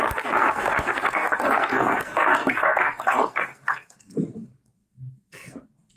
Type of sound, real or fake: fake